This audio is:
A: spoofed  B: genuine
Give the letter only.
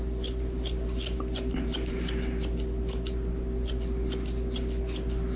B